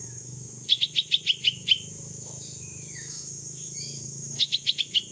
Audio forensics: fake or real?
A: fake